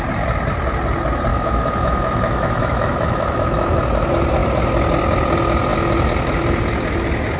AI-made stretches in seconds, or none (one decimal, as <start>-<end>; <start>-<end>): 1.3-3.8